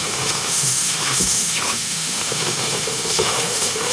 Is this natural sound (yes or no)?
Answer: no